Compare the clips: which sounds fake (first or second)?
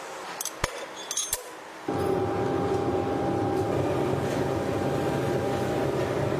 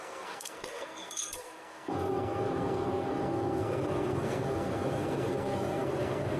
second